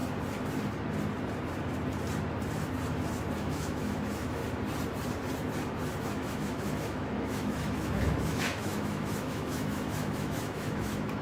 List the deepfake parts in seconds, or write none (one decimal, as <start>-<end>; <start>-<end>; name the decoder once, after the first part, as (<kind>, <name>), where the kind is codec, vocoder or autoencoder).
3.4-4.4 (autoencoder, DAC-VAE); 6.0-11.2